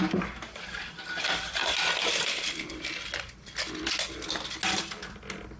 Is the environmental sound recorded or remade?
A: recorded